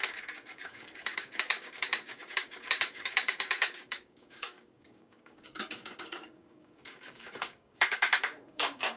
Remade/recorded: remade